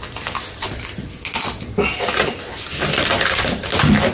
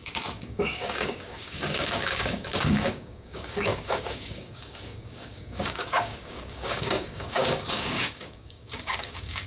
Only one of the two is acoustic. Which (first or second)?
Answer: first